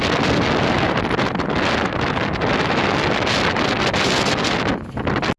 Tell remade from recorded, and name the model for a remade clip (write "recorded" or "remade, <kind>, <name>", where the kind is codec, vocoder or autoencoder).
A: recorded